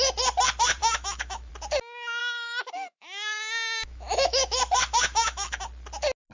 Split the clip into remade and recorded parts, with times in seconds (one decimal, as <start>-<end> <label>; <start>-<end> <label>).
0.0-0.8 recorded; 0.8-1.5 remade; 1.5-2.2 recorded; 2.2-5.6 remade; 5.6-6.3 recorded